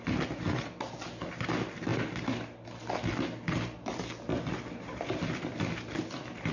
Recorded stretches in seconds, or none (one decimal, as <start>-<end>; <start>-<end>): 0.0-6.5